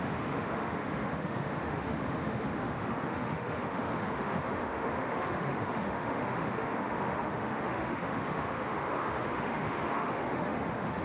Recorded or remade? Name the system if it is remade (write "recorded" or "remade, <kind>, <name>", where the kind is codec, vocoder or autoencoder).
remade, autoencoder, DAC-VAE